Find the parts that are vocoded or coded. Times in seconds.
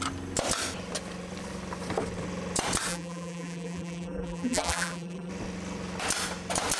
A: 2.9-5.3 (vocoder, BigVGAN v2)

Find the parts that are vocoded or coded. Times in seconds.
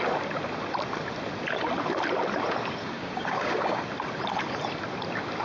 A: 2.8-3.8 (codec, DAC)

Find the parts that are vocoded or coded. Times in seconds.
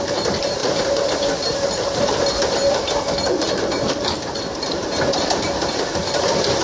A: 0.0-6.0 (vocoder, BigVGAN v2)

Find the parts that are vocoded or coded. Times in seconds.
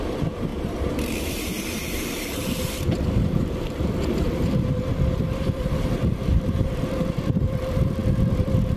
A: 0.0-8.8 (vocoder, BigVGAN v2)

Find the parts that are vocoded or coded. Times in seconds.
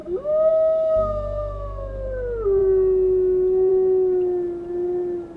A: none